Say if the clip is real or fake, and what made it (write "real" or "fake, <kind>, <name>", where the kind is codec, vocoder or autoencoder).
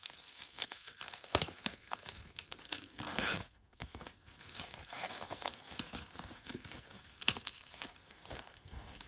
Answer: fake, codec, SNAC